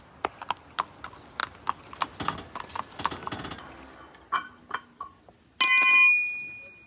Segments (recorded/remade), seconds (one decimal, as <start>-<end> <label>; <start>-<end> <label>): 0.0-6.9 recorded